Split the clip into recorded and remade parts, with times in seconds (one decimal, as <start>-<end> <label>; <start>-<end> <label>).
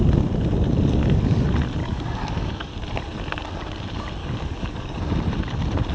0.0-1.8 recorded; 1.8-2.7 remade; 2.7-4.2 recorded; 4.2-5.0 remade; 5.0-5.9 recorded